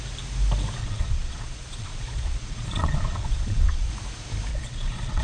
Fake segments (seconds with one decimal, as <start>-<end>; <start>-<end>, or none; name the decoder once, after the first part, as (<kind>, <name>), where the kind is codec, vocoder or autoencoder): 0.8-3.9 (vocoder, Vocos); 4.5-5.2